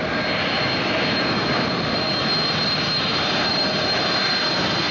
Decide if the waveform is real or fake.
real